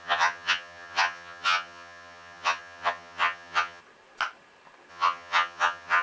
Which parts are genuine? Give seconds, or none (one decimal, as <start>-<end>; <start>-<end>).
3.8-4.9